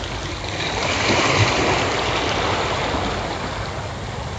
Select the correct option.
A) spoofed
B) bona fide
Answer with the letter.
B